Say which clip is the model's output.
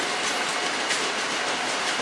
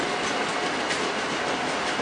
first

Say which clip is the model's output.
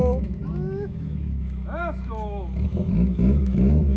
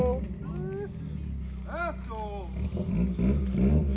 first